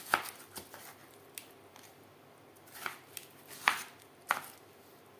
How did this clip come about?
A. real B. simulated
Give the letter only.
A